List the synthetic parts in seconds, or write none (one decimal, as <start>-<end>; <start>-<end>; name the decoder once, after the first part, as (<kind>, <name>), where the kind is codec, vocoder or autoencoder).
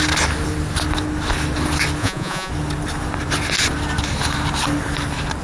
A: 2.0-2.5 (vocoder, Vocos)